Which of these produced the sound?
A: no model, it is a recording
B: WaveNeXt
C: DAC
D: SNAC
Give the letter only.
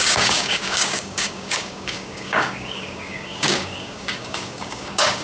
C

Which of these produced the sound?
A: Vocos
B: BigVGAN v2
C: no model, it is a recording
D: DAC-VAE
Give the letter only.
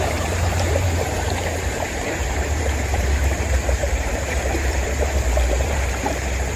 B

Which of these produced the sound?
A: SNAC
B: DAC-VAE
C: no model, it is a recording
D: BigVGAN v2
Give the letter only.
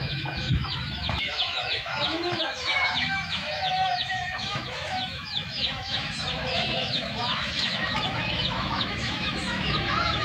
B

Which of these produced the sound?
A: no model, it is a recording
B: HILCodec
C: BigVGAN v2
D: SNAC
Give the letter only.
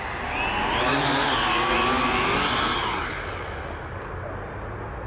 A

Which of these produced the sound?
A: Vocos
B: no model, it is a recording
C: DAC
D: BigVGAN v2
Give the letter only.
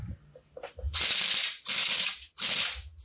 B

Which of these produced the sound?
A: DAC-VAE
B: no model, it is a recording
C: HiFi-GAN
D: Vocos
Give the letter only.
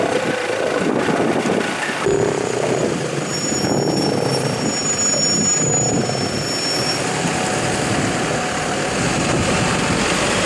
B